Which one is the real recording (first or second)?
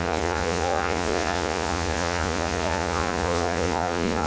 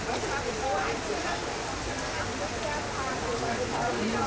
second